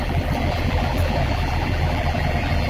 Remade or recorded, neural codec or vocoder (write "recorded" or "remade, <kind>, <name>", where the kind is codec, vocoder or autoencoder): remade, vocoder, BigVGAN v2